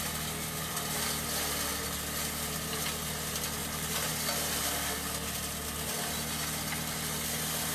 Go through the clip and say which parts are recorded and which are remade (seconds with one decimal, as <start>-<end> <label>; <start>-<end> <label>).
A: 0.0-3.6 recorded; 3.6-4.1 remade; 4.1-7.7 recorded